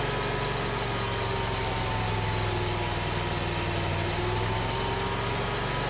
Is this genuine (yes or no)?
yes